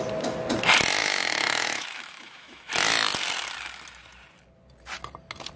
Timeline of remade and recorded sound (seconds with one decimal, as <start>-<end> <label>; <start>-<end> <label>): 0.0-1.0 recorded; 1.0-2.7 remade; 2.7-5.6 recorded